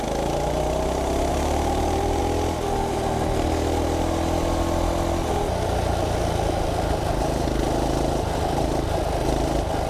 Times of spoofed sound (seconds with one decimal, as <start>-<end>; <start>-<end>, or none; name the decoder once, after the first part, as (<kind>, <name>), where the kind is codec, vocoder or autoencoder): 1.3-2.2 (vocoder, BigVGAN v2)